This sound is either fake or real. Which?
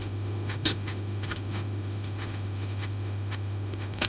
fake